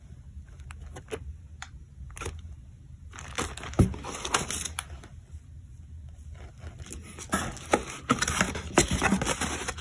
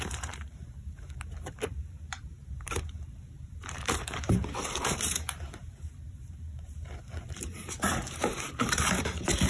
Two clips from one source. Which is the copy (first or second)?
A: second